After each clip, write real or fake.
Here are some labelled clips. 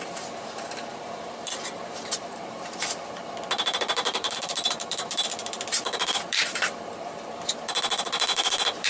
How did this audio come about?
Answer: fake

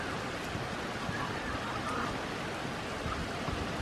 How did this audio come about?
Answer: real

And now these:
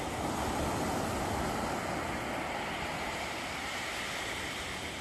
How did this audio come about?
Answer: real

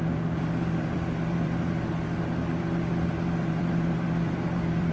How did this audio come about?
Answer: fake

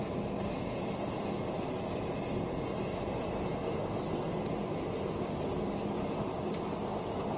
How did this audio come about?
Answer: real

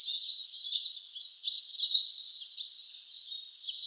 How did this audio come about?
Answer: real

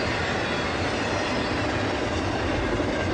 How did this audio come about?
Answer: real